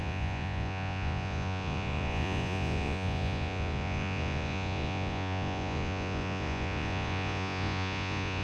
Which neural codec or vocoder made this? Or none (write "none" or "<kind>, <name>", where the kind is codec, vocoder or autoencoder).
vocoder, Vocos